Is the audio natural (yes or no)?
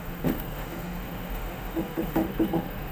no